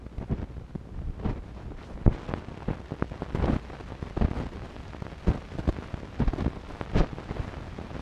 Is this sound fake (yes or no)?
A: no